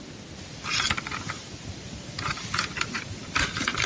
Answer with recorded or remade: recorded